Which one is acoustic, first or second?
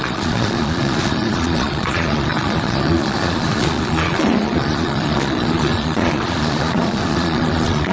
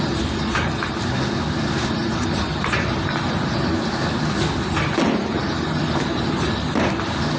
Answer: second